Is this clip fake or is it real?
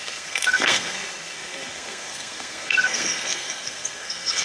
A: fake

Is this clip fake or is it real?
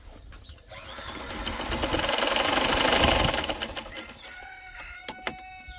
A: real